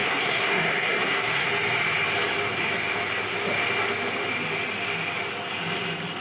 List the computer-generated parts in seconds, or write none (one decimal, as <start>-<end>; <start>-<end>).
0.0-1.5